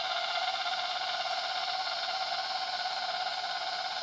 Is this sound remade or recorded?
recorded